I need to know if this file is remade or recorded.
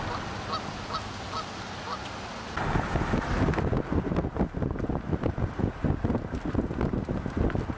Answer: recorded